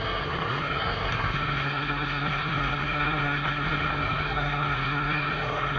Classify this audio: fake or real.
fake